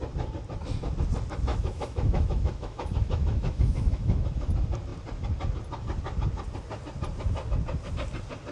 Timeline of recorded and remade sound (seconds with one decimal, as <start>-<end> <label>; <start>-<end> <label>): 0.0-1.5 recorded; 1.5-4.5 remade; 4.5-8.5 recorded